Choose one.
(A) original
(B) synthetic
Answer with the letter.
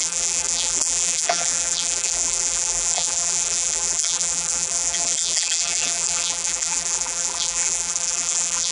B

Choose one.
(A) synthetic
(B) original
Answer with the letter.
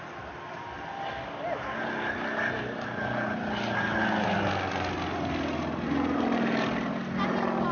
B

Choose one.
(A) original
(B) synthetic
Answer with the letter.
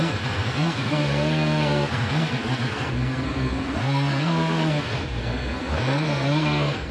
B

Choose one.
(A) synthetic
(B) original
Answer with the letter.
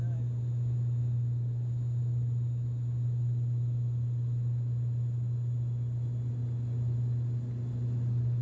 B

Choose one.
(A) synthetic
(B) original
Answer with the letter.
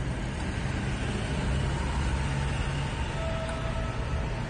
B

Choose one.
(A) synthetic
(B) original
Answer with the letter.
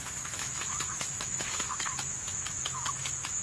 A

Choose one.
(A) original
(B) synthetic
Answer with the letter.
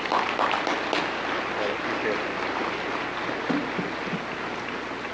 A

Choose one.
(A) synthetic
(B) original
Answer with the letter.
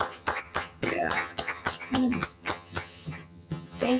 A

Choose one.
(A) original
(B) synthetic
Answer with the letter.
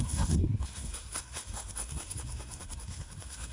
B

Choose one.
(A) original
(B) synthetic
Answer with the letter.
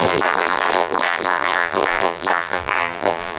B